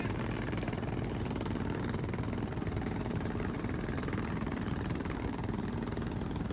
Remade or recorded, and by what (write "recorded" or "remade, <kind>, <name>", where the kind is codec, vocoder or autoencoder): remade, vocoder, BigVGAN v2